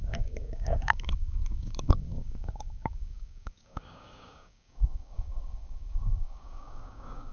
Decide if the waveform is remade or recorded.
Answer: remade